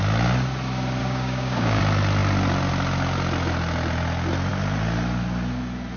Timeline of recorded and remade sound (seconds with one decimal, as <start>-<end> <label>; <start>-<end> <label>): 0.0-1.0 recorded; 1.0-1.8 remade; 1.8-6.0 recorded